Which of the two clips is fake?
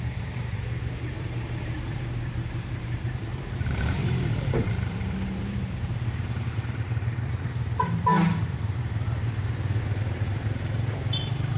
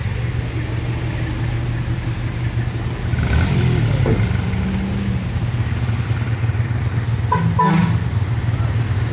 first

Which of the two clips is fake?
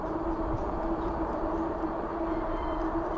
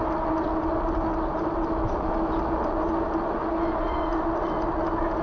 first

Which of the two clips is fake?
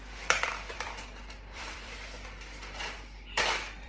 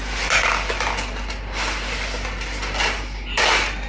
first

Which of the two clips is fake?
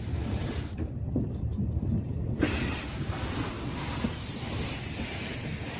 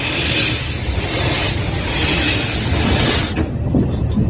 first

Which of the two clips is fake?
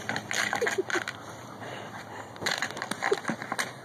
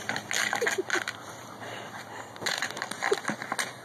first